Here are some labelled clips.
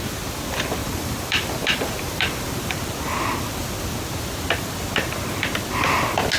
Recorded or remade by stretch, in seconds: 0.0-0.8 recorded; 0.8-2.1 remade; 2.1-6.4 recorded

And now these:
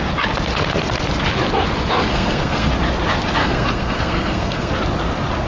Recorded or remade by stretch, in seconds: 0.0-2.1 recorded; 2.1-2.7 remade; 2.7-3.4 recorded; 3.4-4.7 remade; 4.7-5.5 recorded